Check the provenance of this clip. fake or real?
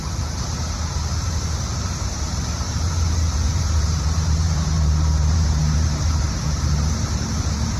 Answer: fake